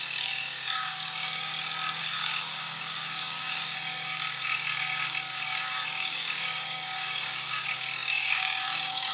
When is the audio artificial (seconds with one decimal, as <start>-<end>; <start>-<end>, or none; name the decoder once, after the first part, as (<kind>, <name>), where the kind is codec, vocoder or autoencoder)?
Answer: 0.0-1.5 (codec, DAC); 2.0-9.1